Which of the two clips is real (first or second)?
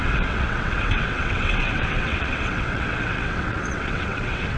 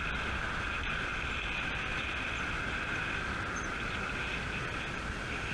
second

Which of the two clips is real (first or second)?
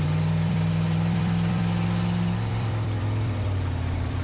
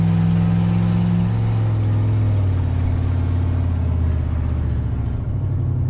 second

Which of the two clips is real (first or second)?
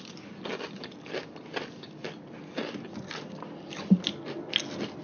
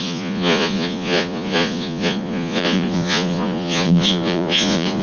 first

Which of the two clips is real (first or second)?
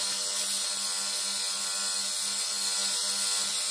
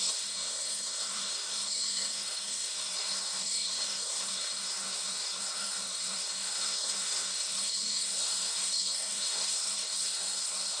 first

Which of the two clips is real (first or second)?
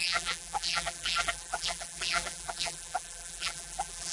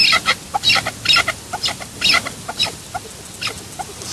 second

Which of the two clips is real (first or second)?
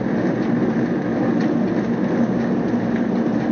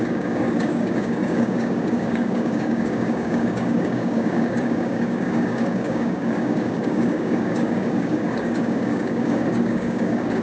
first